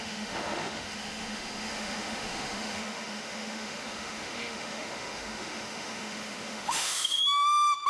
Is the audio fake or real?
fake